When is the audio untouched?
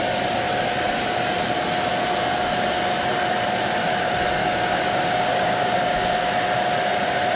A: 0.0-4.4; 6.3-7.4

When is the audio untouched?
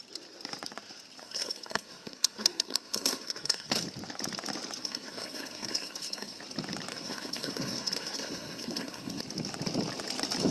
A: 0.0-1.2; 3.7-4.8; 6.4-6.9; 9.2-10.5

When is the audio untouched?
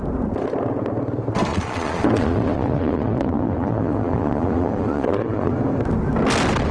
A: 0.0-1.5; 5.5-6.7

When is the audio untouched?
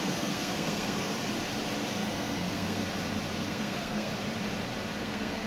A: 1.1-1.9; 2.8-3.4; 4.1-5.0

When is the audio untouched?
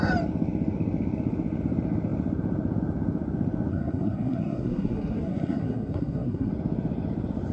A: 0.0-3.7; 6.5-7.5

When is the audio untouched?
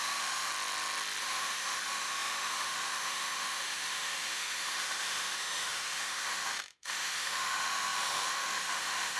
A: 0.5-1.2